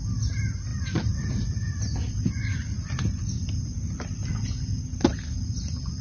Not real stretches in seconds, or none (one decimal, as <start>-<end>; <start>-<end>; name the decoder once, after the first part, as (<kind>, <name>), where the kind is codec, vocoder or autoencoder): 0.7-4.3 (vocoder, BigVGAN v2)